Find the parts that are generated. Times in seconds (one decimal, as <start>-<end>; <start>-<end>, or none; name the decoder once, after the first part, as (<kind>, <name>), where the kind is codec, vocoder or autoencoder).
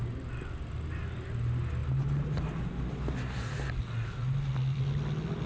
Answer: none